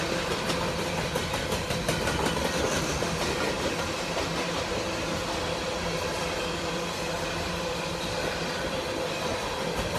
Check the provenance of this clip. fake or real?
real